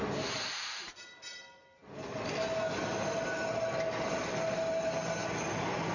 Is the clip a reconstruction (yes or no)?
no